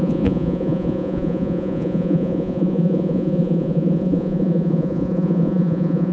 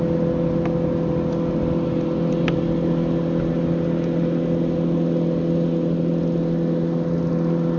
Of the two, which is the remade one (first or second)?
first